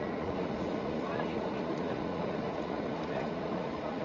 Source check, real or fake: fake